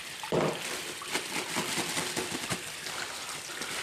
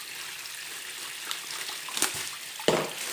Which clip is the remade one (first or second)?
first